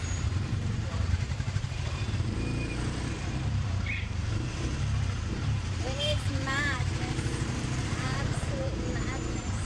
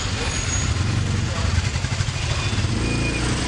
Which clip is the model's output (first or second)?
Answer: first